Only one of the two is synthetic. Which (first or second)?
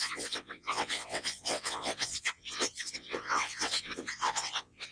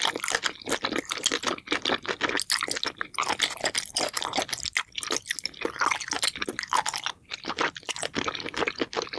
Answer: first